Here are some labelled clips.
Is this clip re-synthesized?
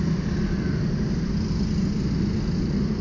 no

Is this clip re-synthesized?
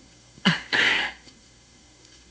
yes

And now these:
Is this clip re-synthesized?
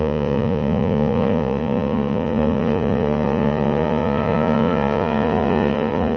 yes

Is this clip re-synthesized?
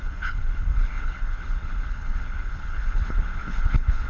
yes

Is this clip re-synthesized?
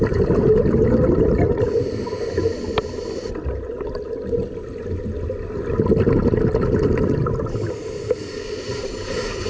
no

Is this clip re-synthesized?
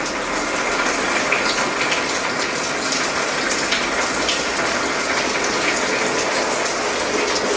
no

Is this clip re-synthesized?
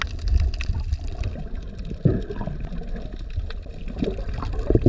no